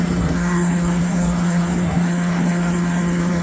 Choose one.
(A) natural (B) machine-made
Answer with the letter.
B